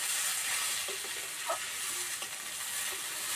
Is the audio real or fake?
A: real